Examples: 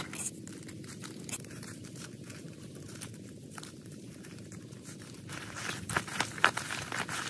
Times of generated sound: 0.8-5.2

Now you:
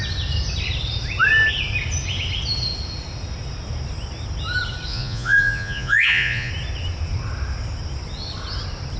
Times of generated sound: 4.9-6.5

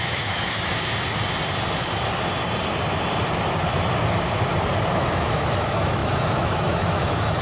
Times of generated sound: 0.0-0.7; 4.9-7.4